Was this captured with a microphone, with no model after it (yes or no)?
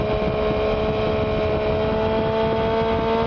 yes